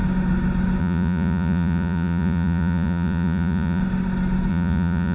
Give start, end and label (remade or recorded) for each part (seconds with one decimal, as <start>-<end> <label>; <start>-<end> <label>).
0.0-0.8 recorded; 0.8-3.8 remade; 3.8-4.5 recorded; 4.5-5.1 remade